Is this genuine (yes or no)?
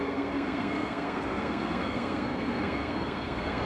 no